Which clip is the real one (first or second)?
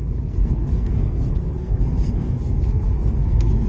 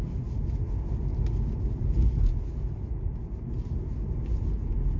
second